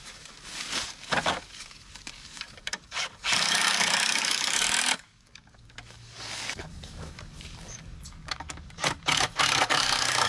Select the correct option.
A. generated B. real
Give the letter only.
A